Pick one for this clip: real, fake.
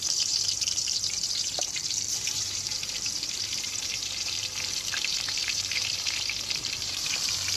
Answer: fake